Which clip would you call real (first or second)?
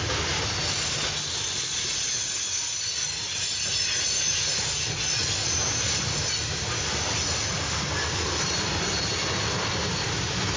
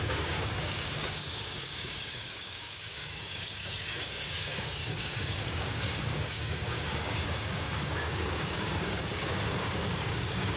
first